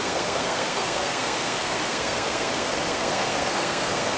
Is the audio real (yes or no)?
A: no